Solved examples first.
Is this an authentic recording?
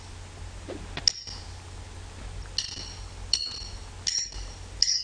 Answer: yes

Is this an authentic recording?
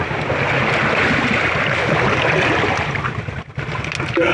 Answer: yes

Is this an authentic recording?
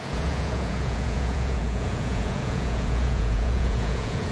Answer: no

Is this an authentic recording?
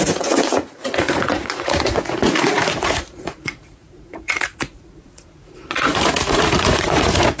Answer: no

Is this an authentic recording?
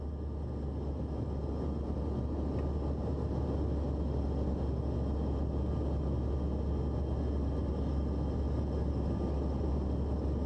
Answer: yes